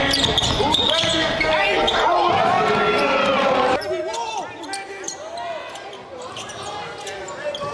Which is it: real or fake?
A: real